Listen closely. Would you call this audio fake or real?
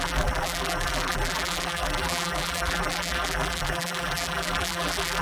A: fake